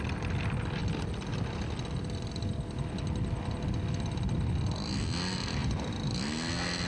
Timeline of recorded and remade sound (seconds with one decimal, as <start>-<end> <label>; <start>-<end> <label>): 0.0-6.9 recorded